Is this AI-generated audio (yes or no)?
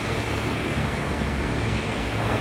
yes